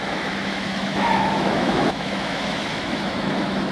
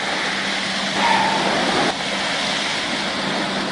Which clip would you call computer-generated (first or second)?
first